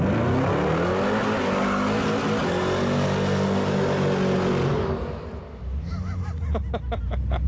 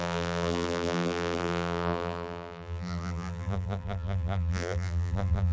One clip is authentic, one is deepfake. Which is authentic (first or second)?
first